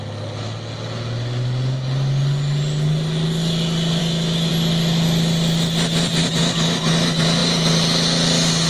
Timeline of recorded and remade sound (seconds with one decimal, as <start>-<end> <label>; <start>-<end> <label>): 0.0-4.0 recorded; 4.0-4.5 remade; 4.5-8.7 recorded